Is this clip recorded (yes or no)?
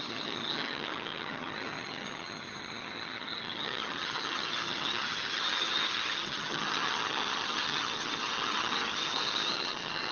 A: no